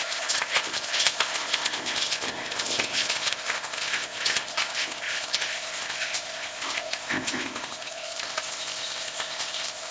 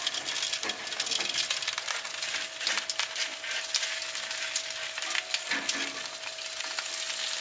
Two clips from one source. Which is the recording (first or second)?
second